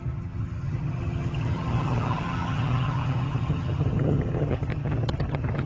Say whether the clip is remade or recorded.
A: remade